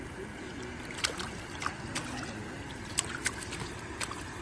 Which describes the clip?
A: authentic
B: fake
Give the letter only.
A